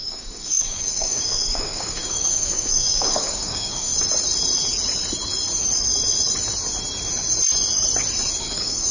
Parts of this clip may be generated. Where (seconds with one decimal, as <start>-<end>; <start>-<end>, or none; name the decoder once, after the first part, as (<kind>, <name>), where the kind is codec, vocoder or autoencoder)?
0.0-3.9 (codec, DAC); 8.4-8.9